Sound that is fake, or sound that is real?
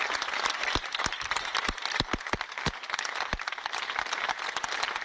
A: real